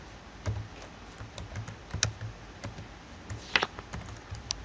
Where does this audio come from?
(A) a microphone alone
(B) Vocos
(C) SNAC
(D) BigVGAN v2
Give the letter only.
A